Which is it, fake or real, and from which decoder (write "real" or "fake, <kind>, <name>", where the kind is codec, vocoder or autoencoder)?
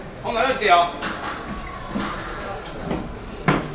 real